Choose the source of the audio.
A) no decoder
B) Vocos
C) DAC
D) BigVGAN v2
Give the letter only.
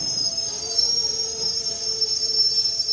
A